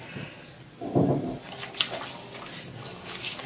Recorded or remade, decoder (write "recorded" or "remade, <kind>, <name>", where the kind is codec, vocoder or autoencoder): recorded